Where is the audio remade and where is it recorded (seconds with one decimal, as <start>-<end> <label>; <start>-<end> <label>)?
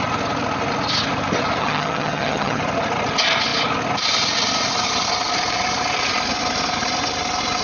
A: 0.0-1.6 recorded; 1.6-2.6 remade; 2.6-7.6 recorded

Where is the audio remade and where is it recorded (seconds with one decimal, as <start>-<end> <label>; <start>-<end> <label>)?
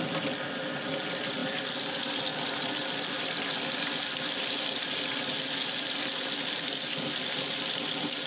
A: 0.0-8.3 recorded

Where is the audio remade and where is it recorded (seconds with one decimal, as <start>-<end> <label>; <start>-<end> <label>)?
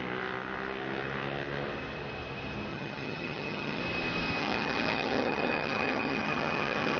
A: 0.0-2.7 recorded; 2.7-3.8 remade; 3.8-4.4 recorded; 4.4-7.0 remade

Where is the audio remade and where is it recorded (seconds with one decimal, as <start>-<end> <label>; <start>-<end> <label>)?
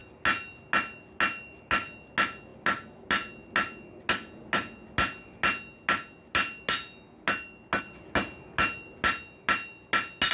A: 0.0-10.3 recorded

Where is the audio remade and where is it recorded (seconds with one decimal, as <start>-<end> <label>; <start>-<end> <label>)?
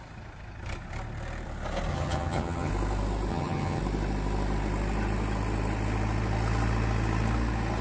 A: 0.0-1.9 recorded; 1.9-2.7 remade; 2.7-3.3 recorded; 3.3-3.8 remade; 3.8-7.8 recorded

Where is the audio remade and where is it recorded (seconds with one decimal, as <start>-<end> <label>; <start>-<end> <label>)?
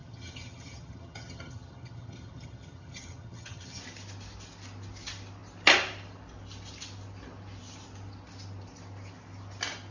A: 0.0-3.8 remade; 3.8-9.9 recorded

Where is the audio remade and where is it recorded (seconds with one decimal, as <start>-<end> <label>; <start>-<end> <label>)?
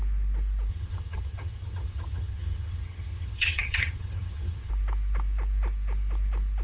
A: 0.0-0.7 recorded; 0.7-4.7 remade; 4.7-6.6 recorded